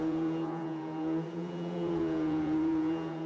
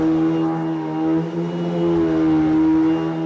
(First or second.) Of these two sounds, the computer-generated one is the first